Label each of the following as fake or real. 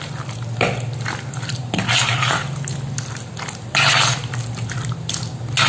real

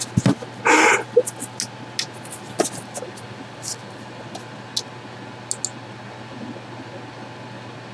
real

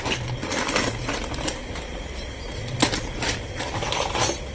real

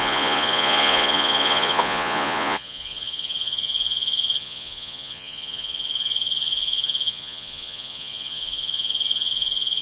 fake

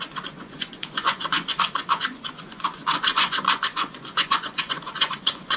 fake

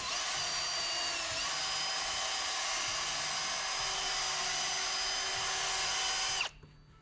real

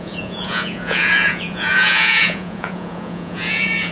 fake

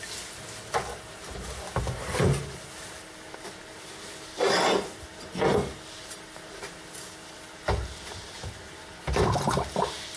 real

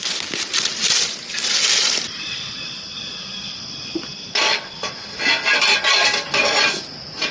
real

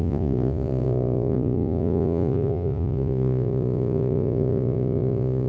fake